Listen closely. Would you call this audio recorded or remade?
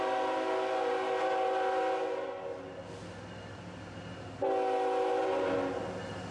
recorded